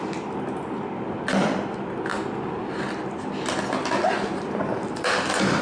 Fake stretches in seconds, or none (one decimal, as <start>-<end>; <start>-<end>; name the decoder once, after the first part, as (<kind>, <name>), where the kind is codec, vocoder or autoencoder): none